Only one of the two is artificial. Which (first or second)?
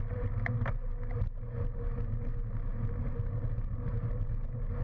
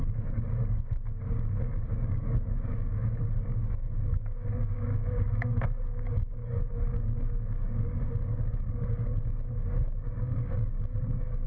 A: second